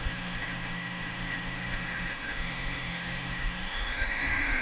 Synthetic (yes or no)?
yes